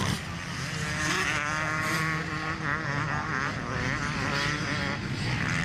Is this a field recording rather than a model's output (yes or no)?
yes